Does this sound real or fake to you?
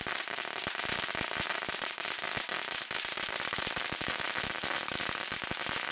real